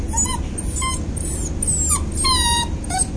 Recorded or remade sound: recorded